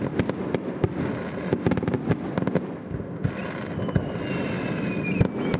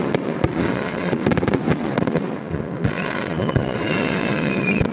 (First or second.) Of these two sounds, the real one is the first